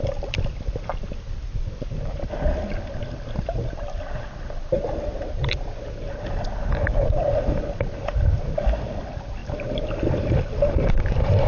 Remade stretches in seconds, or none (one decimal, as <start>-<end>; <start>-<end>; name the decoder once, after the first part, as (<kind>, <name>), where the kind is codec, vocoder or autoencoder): 1.5-2.3 (vocoder, BigVGAN v2); 9.4-11.5